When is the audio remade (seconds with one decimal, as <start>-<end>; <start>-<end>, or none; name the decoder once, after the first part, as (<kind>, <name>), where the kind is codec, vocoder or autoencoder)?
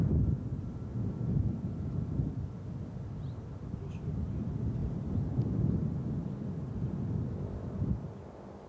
4.8-5.4 (vocoder, BigVGAN v2)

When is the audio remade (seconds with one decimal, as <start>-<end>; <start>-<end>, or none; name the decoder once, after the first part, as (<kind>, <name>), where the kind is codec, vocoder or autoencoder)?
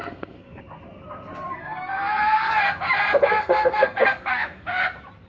0.0-0.6 (codec, SNAC); 1.5-2.5; 3.2-4.7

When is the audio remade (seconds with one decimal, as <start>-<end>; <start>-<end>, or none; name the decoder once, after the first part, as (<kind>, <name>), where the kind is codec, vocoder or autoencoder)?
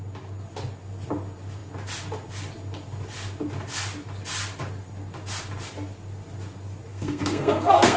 6.9-8.0 (codec, SNAC)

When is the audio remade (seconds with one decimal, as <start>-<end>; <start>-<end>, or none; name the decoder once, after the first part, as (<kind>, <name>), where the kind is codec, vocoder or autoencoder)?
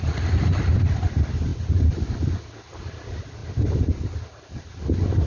none